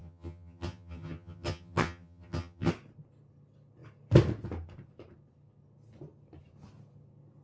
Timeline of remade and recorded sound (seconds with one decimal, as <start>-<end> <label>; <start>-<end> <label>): 0.0-2.7 remade; 2.7-7.4 recorded